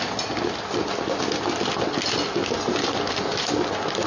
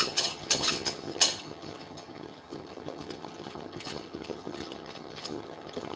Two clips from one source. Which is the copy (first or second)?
second